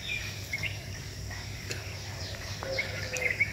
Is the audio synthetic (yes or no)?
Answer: yes